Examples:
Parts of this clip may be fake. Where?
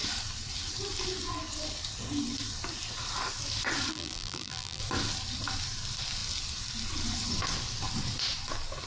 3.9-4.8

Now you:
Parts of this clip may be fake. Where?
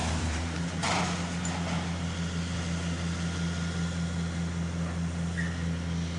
0.0-1.0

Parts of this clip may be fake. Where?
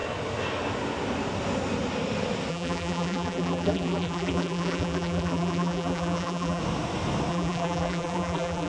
2.5-6.6; 7.3-8.7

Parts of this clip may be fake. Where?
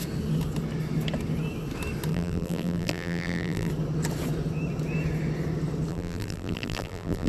2.1-3.7; 5.9-7.3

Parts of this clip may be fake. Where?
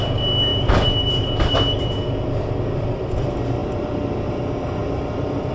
0.5-3.1; 3.6-4.3; 4.8-5.5